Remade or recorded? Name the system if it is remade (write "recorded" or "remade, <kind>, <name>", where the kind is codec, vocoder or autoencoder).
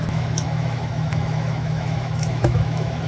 remade, autoencoder, DAC-VAE